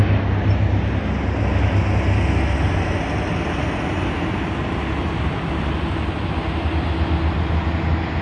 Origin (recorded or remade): recorded